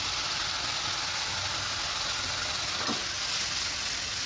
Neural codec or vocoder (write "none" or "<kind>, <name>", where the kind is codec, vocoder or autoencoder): none